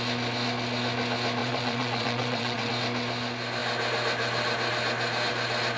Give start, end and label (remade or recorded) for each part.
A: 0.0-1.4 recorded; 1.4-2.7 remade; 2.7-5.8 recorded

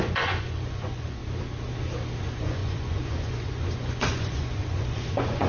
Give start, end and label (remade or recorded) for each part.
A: 0.0-1.2 remade; 1.2-2.2 recorded; 2.2-5.5 remade

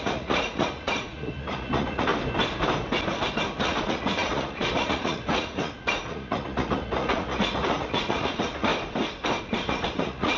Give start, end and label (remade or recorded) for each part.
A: 0.0-2.1 remade; 2.1-3.6 recorded; 3.6-8.7 remade; 8.7-9.4 recorded; 9.4-10.4 remade